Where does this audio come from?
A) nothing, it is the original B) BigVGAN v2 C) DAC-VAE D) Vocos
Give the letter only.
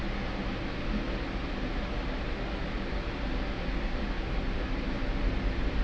A